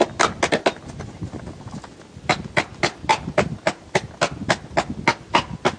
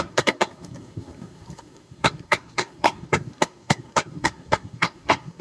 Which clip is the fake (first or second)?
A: second